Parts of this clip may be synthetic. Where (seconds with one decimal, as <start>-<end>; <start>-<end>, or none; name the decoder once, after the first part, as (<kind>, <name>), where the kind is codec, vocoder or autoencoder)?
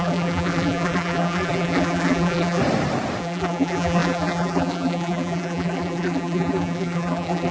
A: 0.0-2.6 (vocoder, BigVGAN v2); 3.2-7.5